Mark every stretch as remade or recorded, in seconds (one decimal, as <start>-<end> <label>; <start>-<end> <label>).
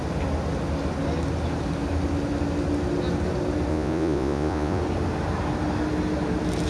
0.0-3.7 recorded; 3.7-4.8 remade; 4.8-6.7 recorded